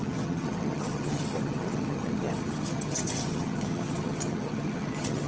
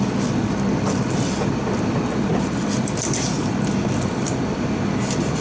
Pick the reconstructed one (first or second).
first